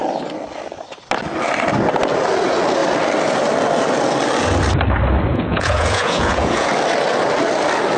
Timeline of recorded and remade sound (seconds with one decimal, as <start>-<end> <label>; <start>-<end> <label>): 0.0-5.3 recorded; 5.3-6.7 remade; 6.7-8.0 recorded